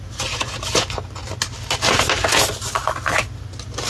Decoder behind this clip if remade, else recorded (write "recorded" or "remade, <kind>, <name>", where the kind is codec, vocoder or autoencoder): recorded